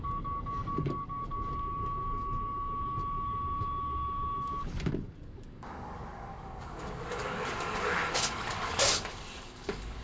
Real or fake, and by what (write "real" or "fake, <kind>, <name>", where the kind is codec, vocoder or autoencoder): fake, codec, DAC